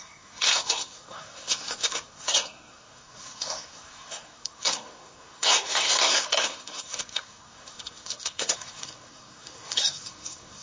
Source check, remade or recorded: remade